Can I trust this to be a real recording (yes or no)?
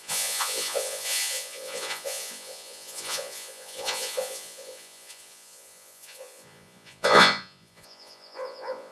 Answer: no